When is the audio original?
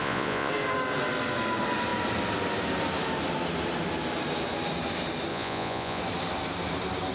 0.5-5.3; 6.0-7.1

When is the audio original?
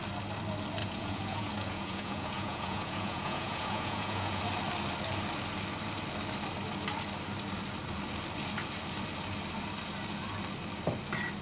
0.0-0.8; 4.4-11.4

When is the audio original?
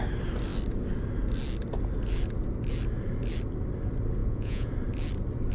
0.0-4.2; 4.7-5.5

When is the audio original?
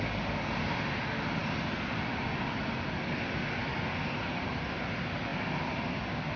0.0-6.4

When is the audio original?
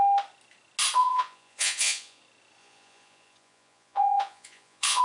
0.0-1.0; 2.2-2.6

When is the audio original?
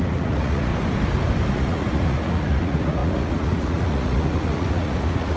0.7-1.5